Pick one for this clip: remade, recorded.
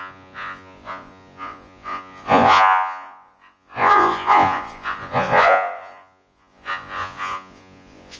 remade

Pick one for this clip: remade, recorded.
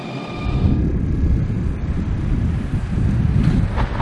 recorded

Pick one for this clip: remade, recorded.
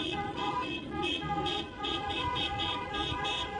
remade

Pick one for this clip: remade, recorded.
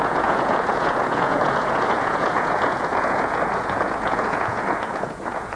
remade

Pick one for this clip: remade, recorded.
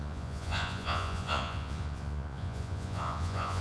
remade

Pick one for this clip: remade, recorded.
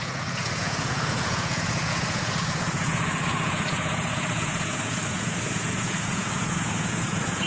remade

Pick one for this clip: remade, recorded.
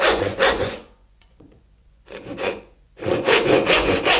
remade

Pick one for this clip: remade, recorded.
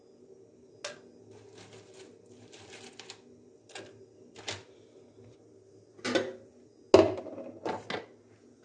recorded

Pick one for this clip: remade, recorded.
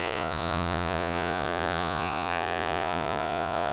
remade